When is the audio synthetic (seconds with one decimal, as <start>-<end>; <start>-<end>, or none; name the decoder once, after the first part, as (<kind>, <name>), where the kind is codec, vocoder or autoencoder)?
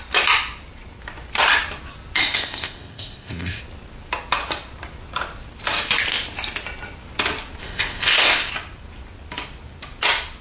2.2-3.6 (codec, ZipCodec); 7.6-8.5